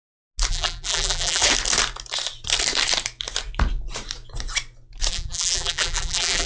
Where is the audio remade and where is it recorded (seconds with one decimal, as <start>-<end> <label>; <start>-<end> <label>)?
0.0-0.5 recorded; 0.5-1.4 remade; 1.4-5.1 recorded; 5.1-6.5 remade